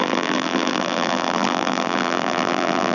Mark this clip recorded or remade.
remade